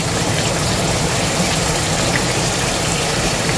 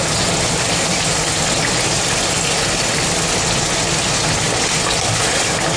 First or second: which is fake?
first